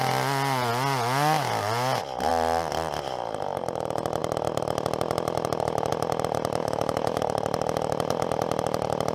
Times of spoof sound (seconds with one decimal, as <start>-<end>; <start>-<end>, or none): 6.6-7.2